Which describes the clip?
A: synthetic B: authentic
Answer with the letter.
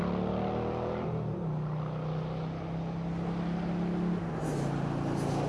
B